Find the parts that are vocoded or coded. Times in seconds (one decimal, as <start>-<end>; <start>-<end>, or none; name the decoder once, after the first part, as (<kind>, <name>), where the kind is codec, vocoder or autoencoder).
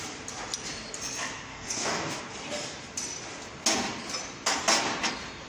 1.5-2.2 (codec, DAC)